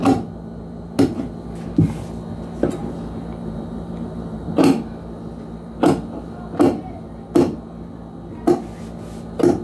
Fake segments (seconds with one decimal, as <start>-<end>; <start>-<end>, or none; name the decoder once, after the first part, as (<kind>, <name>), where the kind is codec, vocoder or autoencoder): 2.8-4.9 (vocoder, BigVGAN v2)

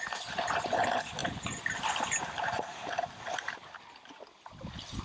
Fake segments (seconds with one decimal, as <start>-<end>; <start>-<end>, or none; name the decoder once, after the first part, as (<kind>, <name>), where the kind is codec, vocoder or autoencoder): none